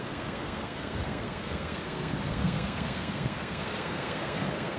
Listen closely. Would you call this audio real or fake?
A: fake